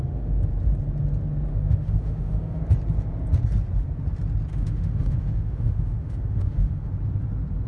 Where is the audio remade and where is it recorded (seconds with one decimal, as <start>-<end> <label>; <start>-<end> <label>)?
0.0-1.5 recorded; 1.5-2.6 remade; 2.6-4.5 recorded; 4.5-6.9 remade; 6.9-7.7 recorded